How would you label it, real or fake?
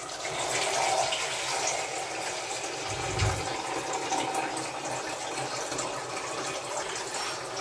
real